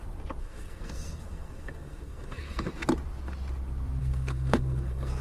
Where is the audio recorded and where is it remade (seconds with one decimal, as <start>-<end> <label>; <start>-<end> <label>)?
0.0-0.4 recorded; 0.4-2.7 remade; 2.7-4.0 recorded; 4.0-5.2 remade